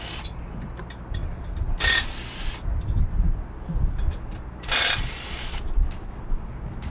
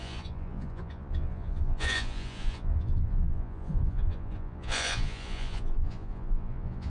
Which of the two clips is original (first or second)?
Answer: first